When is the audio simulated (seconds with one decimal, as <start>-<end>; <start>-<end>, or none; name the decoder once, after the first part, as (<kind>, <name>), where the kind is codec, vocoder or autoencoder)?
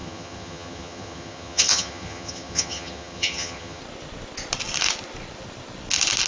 0.0-3.8 (vocoder, HiFi-GAN)